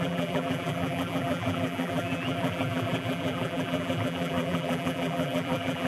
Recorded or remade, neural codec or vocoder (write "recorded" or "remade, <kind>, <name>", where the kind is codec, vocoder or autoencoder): remade, vocoder, BigVGAN v2